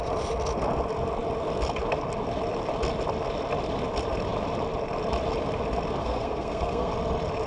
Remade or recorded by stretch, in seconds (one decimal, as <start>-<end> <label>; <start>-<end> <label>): 0.0-6.0 recorded; 6.0-6.9 remade; 6.9-7.5 recorded